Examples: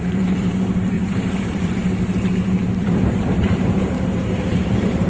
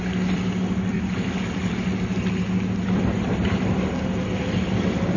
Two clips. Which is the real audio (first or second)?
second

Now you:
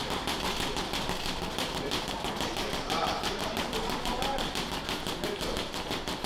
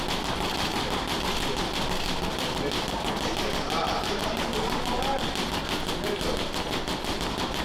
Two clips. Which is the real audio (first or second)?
second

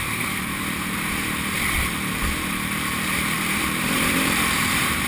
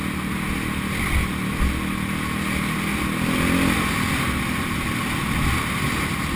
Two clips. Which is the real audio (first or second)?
second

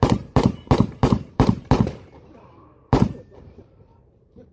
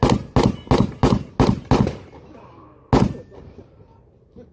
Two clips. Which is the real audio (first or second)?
second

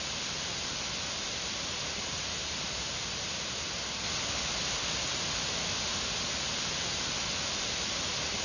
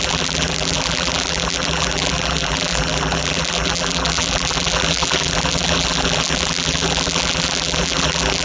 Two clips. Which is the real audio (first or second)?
first